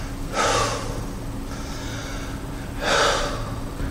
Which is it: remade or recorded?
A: recorded